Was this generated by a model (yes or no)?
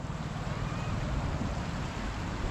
yes